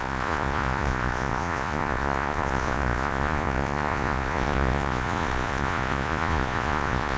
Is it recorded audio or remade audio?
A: remade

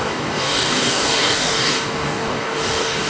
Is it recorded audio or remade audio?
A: remade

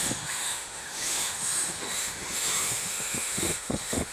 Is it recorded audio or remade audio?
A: remade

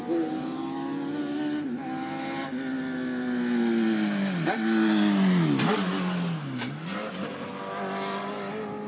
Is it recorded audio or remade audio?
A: recorded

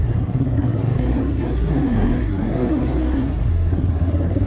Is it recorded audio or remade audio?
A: remade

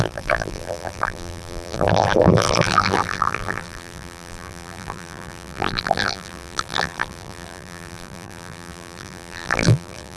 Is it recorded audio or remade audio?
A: remade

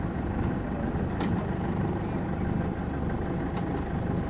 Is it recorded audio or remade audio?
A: recorded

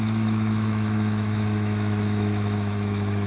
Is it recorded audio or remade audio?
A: remade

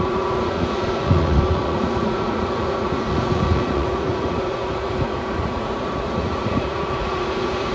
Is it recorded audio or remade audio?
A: remade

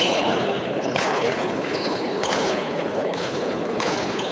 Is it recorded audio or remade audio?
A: remade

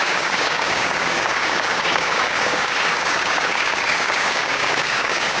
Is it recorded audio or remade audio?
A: remade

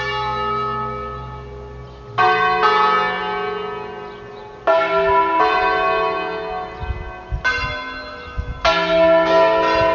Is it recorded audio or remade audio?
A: recorded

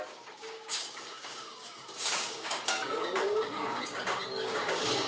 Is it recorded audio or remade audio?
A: remade